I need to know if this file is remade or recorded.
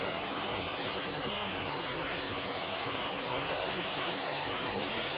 remade